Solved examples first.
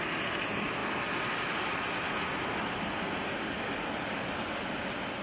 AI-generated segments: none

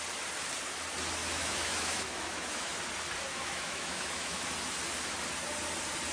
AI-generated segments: 1.2-2.8 (autoencoder, DAC-VAE); 3.3-4.4

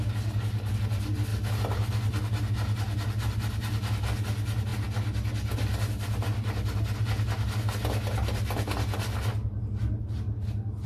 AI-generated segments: none

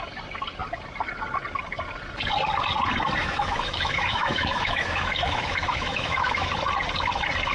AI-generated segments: 3.2-6.5 (autoencoder, DAC-VAE)

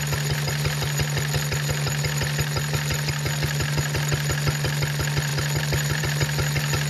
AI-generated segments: none